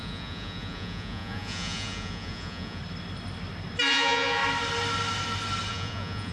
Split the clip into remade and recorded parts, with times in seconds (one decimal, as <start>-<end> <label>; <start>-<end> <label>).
0.0-2.8 remade; 2.8-3.9 recorded; 3.9-4.4 remade; 4.4-5.7 recorded; 5.7-6.3 remade